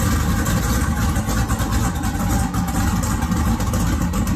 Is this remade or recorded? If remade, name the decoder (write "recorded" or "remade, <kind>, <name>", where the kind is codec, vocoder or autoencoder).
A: recorded